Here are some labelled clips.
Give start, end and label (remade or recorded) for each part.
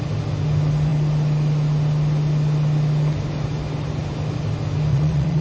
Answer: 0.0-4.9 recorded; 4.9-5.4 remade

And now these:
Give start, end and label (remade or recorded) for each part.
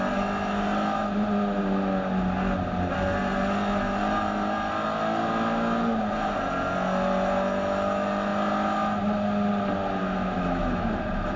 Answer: 0.0-10.0 recorded; 10.0-10.9 remade; 10.9-11.4 recorded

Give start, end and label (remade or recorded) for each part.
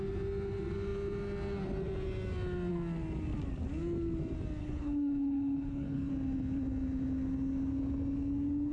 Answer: 0.0-4.6 recorded; 4.6-6.1 remade; 6.1-8.7 recorded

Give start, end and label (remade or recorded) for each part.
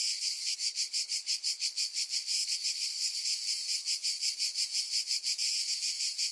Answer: 0.0-3.3 remade; 3.3-6.3 recorded